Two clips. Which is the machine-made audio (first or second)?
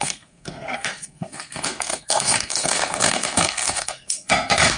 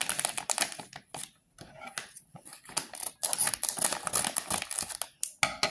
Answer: first